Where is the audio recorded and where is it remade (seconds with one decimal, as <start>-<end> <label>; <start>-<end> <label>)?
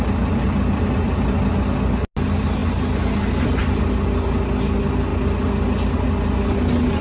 0.0-7.0 recorded